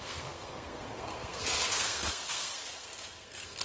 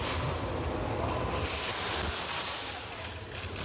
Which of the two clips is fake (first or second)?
first